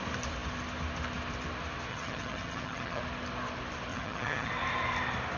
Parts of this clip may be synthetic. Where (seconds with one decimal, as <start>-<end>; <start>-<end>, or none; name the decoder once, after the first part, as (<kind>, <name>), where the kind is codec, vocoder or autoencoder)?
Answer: 1.9-3.0 (vocoder, HiFi-GAN); 3.9-4.5